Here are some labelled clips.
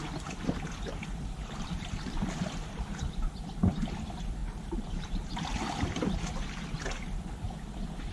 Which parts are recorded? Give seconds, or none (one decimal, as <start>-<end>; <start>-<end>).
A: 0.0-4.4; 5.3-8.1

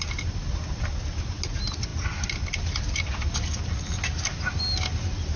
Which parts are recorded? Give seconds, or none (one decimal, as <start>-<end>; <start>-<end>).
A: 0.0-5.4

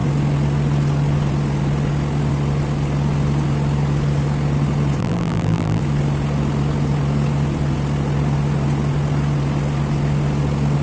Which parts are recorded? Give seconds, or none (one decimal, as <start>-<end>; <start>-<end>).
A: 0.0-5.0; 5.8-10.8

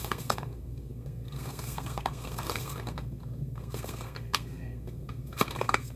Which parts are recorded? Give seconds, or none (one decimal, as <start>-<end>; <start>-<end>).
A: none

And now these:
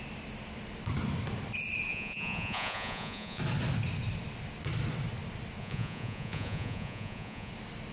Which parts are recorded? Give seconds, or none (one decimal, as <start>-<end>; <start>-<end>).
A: 0.0-1.9; 3.4-5.6; 7.5-7.9

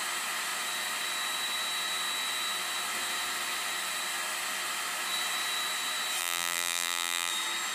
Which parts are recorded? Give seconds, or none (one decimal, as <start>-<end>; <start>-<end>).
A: 0.0-6.2; 7.3-7.7

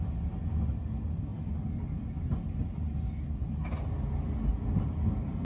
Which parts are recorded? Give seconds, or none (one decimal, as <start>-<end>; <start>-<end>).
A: 0.0-5.4

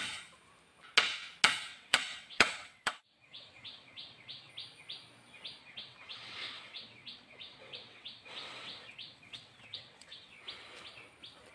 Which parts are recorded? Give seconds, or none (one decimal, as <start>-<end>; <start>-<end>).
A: 0.0-1.7; 4.5-5.6; 10.3-11.5